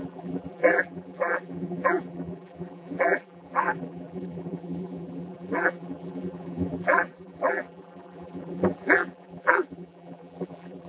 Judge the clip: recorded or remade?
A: remade